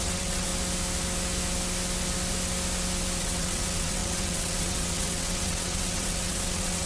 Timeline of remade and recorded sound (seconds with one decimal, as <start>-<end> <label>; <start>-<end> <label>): 0.0-0.5 remade; 0.5-3.2 recorded; 3.2-6.9 remade